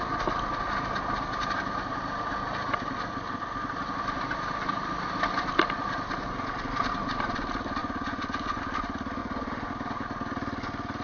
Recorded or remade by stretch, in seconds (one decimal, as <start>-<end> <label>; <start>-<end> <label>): 0.0-7.8 recorded; 7.8-8.6 remade; 8.6-9.2 recorded; 9.2-9.7 remade; 9.7-11.0 recorded